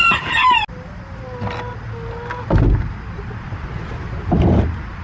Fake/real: real